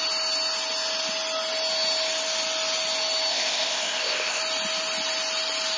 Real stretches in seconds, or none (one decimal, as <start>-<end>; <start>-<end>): 0.0-3.3; 4.4-5.8